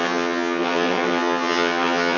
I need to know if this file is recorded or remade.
remade